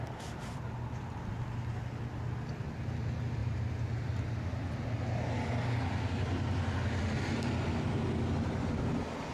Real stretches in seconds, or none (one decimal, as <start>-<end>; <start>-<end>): 0.0-3.4; 3.9-9.3